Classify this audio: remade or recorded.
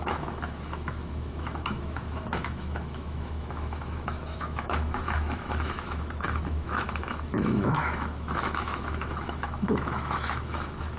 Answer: remade